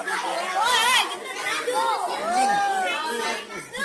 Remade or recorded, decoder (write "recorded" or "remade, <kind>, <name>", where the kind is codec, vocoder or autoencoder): recorded